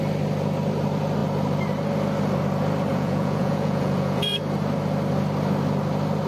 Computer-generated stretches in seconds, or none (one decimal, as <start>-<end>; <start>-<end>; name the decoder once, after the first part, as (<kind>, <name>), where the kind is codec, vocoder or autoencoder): 2.9-4.4 (vocoder, Vocos)